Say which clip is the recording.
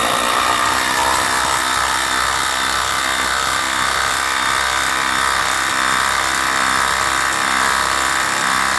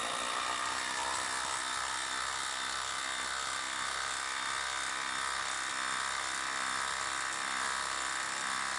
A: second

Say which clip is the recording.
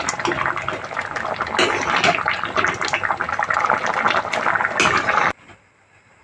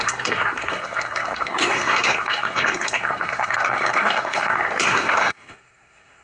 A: first